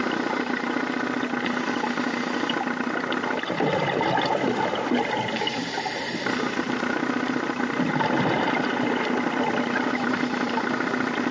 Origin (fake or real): real